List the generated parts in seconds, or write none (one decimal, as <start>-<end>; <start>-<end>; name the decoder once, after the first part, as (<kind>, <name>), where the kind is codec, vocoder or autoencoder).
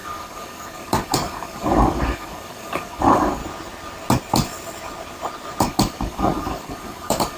0.0-3.4 (codec, DAC); 5.6-7.4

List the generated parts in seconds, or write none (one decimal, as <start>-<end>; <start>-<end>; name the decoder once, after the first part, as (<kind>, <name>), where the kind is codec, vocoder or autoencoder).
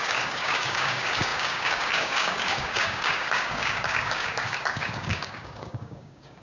0.0-6.4 (codec, DAC)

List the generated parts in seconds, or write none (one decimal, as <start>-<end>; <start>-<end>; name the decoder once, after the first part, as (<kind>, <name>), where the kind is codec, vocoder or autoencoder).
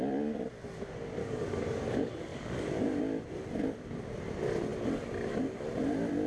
1.2-1.8 (codec, DAC); 2.3-3.0